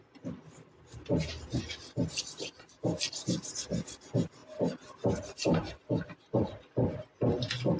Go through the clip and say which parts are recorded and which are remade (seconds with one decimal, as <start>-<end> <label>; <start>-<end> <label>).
0.0-7.8 recorded